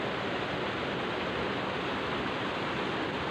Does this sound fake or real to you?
real